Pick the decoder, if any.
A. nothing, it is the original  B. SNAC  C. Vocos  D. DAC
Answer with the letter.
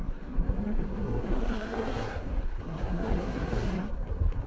B